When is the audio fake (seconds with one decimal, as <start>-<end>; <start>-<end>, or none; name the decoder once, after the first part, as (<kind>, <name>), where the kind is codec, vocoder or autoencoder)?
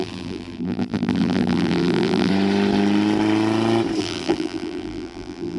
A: 0.0-2.3 (vocoder, BigVGAN v2); 4.0-5.6